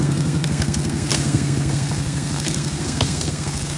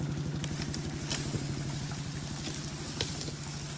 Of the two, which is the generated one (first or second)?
first